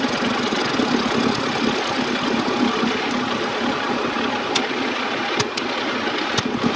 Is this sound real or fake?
real